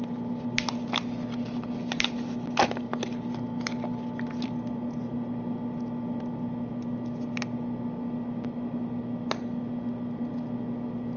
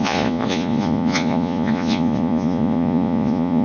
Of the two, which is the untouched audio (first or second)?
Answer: first